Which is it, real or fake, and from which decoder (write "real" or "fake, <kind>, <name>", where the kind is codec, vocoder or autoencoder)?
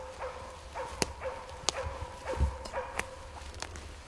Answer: real